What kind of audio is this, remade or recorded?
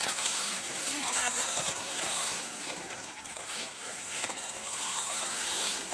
remade